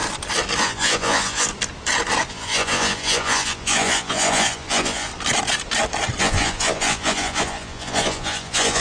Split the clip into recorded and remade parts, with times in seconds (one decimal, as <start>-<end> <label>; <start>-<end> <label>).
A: 0.0-0.6 recorded; 0.6-1.5 remade; 1.5-2.3 recorded; 2.3-5.1 remade; 5.1-6.2 recorded; 6.2-8.8 remade